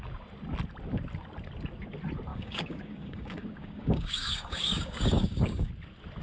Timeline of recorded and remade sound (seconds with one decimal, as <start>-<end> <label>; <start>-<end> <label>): 0.0-2.3 recorded; 2.3-5.7 remade; 5.7-6.2 recorded